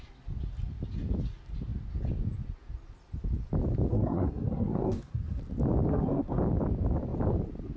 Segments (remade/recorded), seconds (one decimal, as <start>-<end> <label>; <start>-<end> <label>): 0.0-3.9 recorded; 3.9-5.4 remade; 5.4-5.9 recorded; 5.9-6.4 remade; 6.4-7.8 recorded